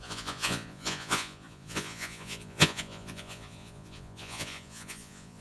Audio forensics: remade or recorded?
remade